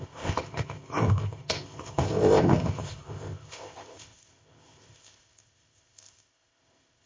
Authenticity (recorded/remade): remade